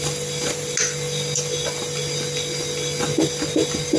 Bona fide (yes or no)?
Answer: yes